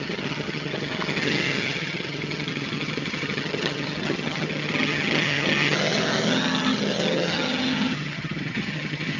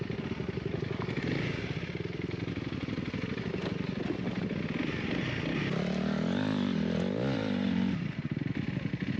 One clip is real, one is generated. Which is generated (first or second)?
first